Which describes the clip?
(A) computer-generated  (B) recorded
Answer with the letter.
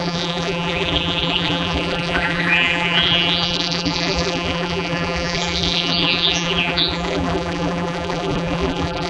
A